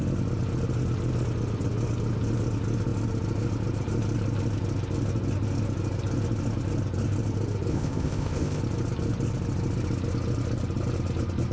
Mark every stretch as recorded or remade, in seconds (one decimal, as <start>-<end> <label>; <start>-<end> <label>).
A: 0.0-7.7 recorded; 7.7-8.6 remade; 8.6-11.5 recorded